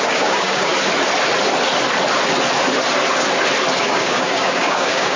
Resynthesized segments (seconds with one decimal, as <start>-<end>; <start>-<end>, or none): 0.0-0.7; 3.8-5.2